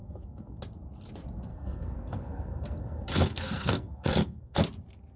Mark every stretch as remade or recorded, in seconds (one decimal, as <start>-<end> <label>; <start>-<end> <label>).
0.0-0.6 remade; 0.6-1.5 recorded; 1.5-4.6 remade; 4.6-5.2 recorded